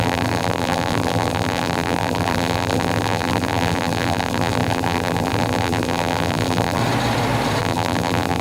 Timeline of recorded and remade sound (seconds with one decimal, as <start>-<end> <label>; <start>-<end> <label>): 0.0-6.8 remade; 6.8-7.6 recorded; 7.6-8.4 remade